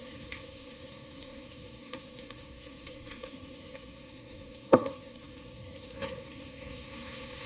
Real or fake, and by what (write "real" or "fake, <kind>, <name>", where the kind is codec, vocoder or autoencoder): fake, codec, SNAC